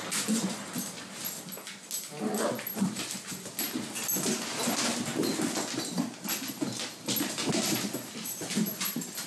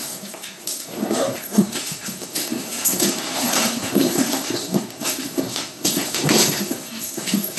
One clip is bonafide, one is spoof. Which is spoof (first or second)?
second